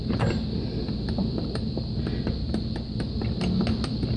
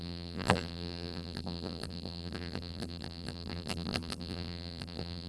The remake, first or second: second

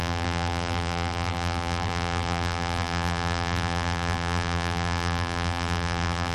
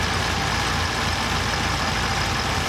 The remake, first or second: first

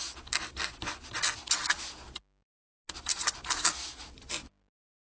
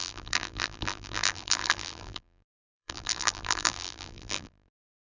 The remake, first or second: second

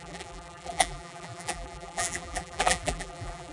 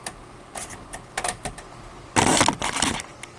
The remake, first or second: first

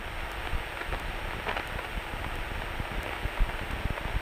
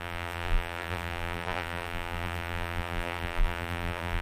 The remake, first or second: second